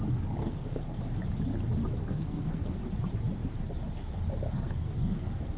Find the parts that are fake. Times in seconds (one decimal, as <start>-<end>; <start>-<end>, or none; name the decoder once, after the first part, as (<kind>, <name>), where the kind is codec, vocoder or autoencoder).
0.4-1.0 (codec, SNAC); 2.0-2.8; 4.5-5.6